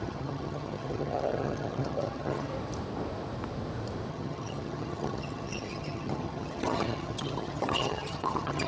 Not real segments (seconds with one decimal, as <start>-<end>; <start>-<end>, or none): 0.0-2.5; 4.1-8.7